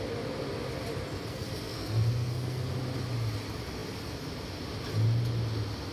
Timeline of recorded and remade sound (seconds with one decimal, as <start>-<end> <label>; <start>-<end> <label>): 0.0-1.3 recorded; 1.3-2.7 remade; 2.7-5.9 recorded